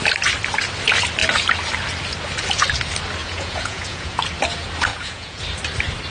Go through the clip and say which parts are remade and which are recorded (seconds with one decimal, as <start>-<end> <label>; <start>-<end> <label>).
0.0-3.2 recorded; 3.2-4.2 remade; 4.2-4.9 recorded; 4.9-5.4 remade; 5.4-6.1 recorded